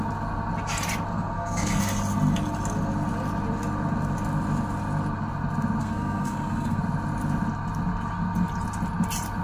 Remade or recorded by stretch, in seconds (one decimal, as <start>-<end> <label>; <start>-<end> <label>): 0.0-1.1 recorded; 1.1-1.8 remade; 1.8-5.8 recorded; 5.8-6.8 remade; 6.8-9.4 recorded